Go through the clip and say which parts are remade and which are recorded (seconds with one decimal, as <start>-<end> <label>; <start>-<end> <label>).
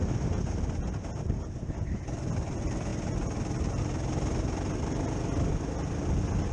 0.0-6.5 recorded